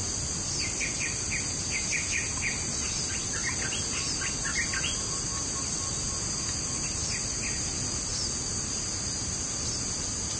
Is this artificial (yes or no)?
no